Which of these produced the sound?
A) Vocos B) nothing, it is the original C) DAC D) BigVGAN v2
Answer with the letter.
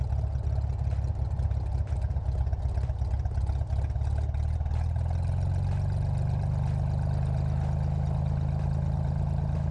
B